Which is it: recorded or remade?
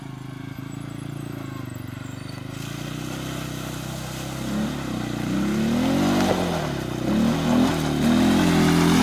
recorded